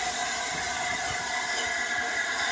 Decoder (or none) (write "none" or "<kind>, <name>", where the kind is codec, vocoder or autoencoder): none